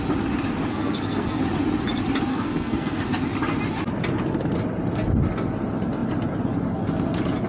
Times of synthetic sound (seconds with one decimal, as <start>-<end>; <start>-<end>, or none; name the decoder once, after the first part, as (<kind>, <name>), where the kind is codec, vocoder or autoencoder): 0.7-1.4 (codec, SNAC); 2.3-3.0